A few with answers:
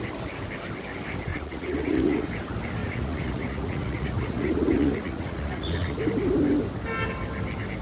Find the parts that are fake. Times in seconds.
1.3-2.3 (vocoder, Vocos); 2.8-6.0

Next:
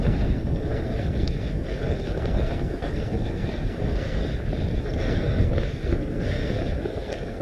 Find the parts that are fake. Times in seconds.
0.0-4.2 (codec, SNAC); 4.8-7.4

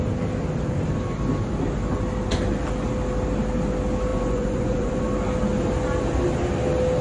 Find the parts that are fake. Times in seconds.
4.1-5.0 (vocoder, Vocos)

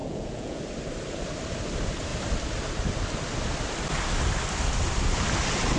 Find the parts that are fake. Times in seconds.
0.0-0.6 (vocoder, Vocos)

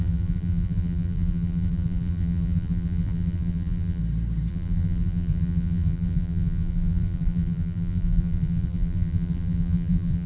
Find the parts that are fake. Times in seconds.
0.0-4.0 (vocoder, BigVGAN v2); 4.5-10.3

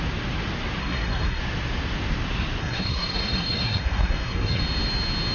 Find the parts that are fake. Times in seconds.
0.8-1.4 (codec, SNAC); 2.6-4.6